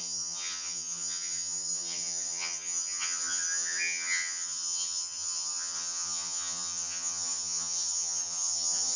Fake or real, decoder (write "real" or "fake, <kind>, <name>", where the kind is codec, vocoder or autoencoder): fake, vocoder, HiFi-GAN